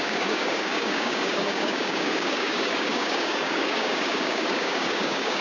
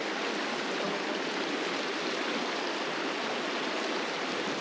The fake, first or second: first